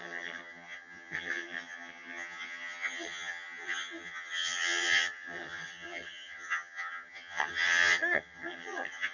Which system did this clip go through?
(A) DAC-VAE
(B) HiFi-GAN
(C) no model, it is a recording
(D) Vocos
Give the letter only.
B